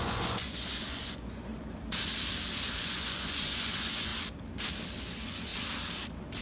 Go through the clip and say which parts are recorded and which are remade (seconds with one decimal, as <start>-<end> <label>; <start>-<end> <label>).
0.0-1.5 remade; 1.5-2.8 recorded; 2.8-4.1 remade; 4.1-5.0 recorded; 5.0-5.5 remade; 5.5-6.4 recorded